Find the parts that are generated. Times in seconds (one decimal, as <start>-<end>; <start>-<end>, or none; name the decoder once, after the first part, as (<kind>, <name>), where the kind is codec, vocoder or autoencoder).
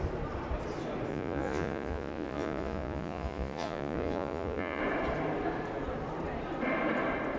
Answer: 1.1-4.8 (vocoder, Vocos)